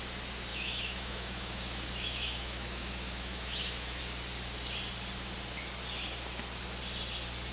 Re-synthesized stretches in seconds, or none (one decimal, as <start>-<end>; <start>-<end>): 0.5-4.0